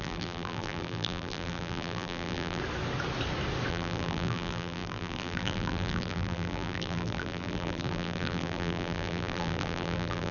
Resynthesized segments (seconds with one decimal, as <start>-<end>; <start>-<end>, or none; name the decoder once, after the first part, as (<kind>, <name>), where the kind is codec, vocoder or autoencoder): 0.0-2.6 (vocoder, BigVGAN v2); 3.7-10.3